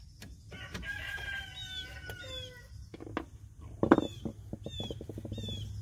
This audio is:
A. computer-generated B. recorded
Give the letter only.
B